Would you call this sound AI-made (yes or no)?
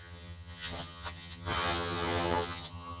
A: yes